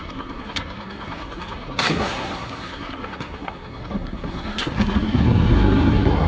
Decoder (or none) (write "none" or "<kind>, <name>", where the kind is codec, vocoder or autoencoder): codec, SNAC